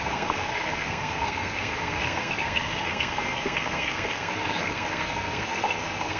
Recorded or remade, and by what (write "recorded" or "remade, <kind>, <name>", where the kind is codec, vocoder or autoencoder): remade, codec, SNAC